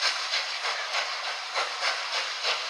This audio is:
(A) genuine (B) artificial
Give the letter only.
A